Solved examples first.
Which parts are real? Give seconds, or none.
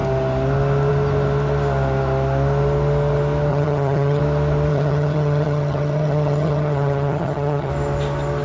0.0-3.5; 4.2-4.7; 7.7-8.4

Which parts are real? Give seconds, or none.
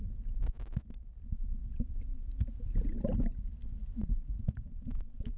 0.0-5.4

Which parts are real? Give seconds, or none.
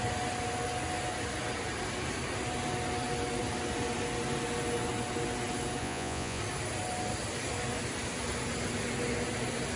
0.0-5.8; 6.4-9.8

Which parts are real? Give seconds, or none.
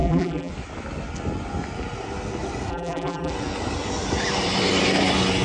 0.5-2.7; 3.3-5.4